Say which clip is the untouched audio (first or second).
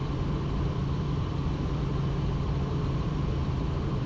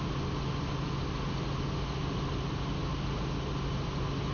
second